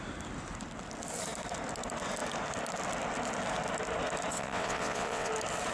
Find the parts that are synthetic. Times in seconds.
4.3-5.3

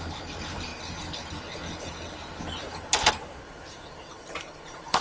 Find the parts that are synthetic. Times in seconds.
0.0-0.7; 3.1-5.0

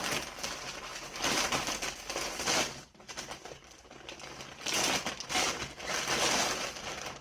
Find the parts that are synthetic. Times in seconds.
none

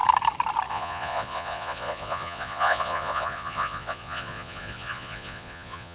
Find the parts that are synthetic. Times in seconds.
0.7-5.9

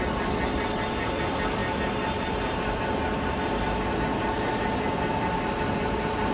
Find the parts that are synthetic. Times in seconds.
0.0-1.6; 5.4-6.3

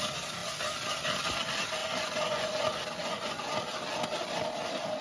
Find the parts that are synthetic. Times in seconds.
1.8-2.5; 3.0-3.5